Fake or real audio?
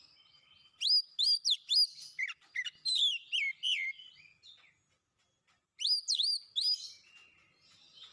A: real